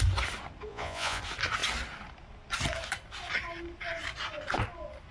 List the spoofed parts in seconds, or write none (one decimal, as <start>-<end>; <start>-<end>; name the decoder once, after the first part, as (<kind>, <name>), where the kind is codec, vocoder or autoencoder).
0.7-1.2 (vocoder, Vocos)